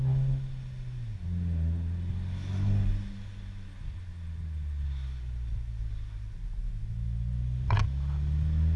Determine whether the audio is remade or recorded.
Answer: recorded